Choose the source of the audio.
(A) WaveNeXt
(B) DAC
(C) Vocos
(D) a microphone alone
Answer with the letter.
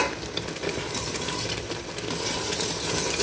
D